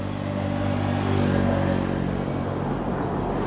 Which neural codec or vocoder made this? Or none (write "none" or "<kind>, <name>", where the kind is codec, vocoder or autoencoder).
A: none